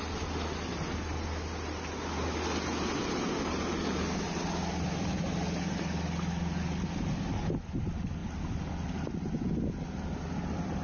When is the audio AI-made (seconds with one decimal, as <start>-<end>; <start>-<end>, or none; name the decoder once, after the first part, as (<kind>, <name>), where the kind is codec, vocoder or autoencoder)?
none

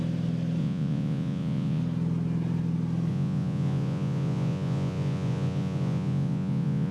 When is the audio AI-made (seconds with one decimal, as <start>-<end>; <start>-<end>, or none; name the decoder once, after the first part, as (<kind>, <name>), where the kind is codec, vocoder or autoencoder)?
0.6-1.8 (vocoder, Vocos); 3.1-6.9

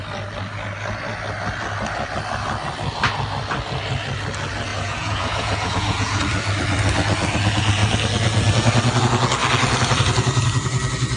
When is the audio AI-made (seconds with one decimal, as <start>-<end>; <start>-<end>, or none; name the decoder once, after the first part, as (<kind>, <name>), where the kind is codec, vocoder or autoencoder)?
4.7-6.2 (vocoder, Vocos)

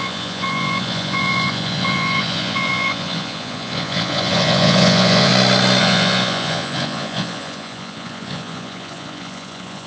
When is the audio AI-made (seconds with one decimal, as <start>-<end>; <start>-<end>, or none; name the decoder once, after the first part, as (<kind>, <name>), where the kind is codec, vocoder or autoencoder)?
0.0-5.3 (vocoder, Vocos); 5.8-9.9

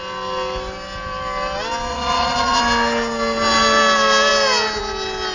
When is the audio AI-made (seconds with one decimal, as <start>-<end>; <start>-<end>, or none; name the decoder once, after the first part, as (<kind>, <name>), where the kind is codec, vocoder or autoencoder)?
1.9-2.6 (vocoder, Vocos)

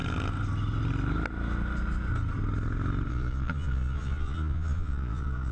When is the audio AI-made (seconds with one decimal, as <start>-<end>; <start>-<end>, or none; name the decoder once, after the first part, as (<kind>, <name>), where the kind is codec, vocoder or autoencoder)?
3.1-5.5 (vocoder, Vocos)

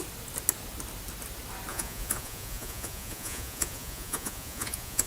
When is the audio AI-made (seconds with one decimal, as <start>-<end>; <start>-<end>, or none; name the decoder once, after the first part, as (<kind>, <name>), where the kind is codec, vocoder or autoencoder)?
1.7-5.1 (vocoder, Vocos)

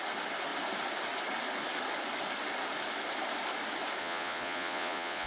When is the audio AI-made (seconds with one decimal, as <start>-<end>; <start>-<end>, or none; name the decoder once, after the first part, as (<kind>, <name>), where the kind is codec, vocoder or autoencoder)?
4.0-5.3 (vocoder, Vocos)